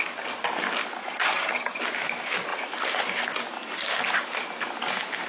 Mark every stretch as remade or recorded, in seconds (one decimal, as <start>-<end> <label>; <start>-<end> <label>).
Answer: 0.0-1.0 recorded; 1.0-1.8 remade; 1.8-5.3 recorded